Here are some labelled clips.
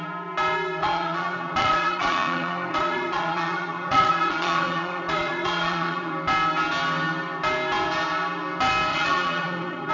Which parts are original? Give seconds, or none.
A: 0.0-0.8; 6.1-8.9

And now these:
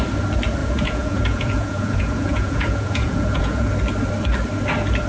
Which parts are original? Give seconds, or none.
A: 0.0-0.6; 3.7-5.1

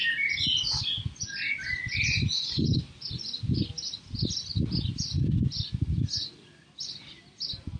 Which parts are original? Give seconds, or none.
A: 0.0-7.8

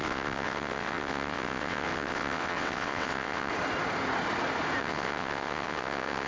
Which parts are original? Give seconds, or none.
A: 3.5-4.8

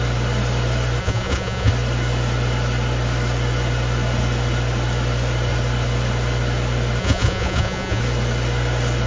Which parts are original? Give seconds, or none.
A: 0.0-1.0; 1.7-7.0; 8.0-9.1

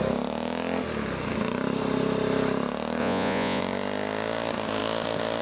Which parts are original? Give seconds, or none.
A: 0.0-3.0; 3.6-5.4

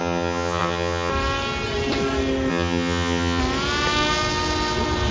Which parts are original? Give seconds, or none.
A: 1.1-2.5; 3.4-5.1